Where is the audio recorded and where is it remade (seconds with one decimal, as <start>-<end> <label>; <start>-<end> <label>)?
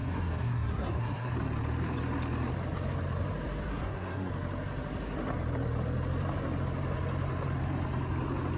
0.0-1.3 remade; 1.3-3.7 recorded; 3.7-4.3 remade; 4.3-8.6 recorded